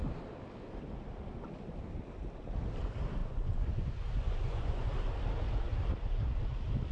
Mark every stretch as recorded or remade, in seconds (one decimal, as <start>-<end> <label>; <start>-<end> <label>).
0.0-3.2 recorded; 3.2-4.9 remade; 4.9-6.9 recorded